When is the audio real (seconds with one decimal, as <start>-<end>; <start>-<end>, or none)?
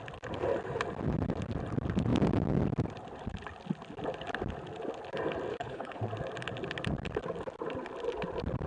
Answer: 0.0-5.5; 6.0-8.7